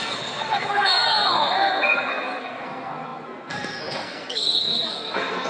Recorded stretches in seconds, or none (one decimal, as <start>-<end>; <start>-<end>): none